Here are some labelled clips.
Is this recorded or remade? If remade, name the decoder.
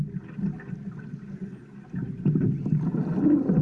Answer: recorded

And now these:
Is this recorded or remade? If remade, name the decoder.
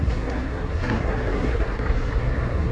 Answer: remade, codec, SNAC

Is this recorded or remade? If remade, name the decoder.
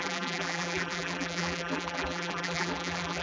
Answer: remade, vocoder, BigVGAN v2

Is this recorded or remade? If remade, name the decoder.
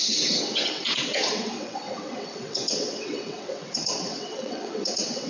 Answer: remade, vocoder, WaveNeXt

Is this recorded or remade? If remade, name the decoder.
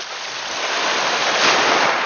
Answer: recorded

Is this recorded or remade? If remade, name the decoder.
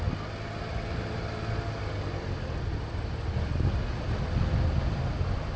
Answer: recorded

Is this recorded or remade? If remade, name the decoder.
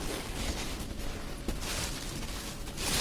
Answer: recorded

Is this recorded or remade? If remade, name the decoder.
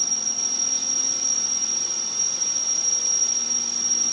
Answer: recorded